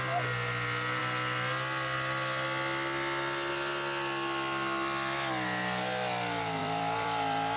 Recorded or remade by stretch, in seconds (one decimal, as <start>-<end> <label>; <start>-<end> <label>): 0.0-6.6 recorded; 6.6-7.6 remade